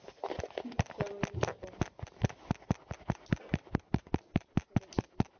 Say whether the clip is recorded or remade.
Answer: recorded